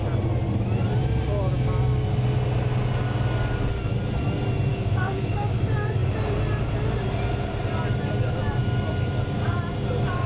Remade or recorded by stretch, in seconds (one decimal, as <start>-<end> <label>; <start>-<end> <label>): 0.0-4.7 recorded; 4.7-5.6 remade; 5.6-10.3 recorded